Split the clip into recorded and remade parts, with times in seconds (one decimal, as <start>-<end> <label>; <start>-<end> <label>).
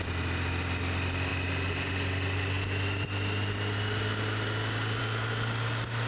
0.0-6.1 recorded